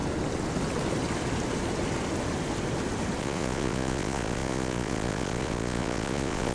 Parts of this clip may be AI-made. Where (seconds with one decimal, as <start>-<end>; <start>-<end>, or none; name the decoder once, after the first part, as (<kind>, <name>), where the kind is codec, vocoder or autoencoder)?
3.2-6.5 (vocoder, Vocos)